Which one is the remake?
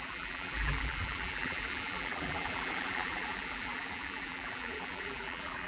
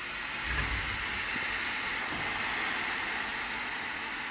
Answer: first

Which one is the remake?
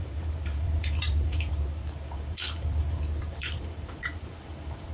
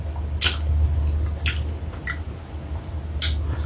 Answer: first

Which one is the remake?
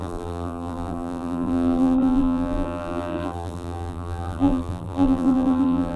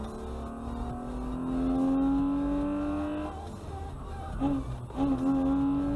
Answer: first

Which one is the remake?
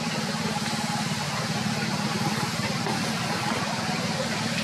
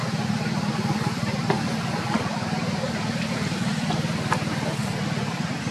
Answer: second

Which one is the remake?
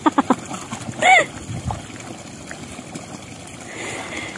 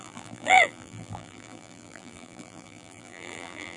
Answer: second